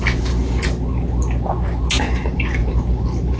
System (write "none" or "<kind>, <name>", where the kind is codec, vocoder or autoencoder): none